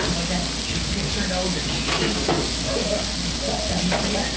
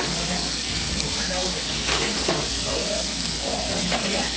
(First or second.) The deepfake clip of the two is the second